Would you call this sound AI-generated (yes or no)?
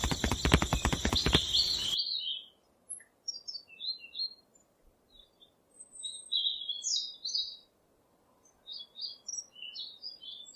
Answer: no